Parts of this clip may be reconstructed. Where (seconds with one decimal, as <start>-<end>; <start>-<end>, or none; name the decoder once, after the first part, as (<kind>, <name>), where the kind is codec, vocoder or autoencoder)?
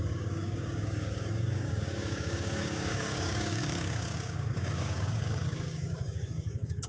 0.0-6.9 (codec, DAC)